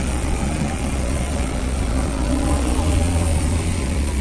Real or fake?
fake